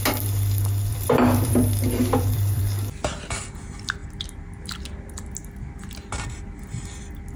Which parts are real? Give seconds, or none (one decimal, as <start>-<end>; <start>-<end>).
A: 0.0-0.9; 2.6-7.4